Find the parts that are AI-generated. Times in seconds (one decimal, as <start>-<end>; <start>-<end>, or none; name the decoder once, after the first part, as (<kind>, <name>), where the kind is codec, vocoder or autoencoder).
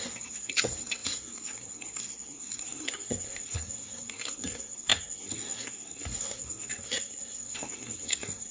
0.0-8.5 (codec, SNAC)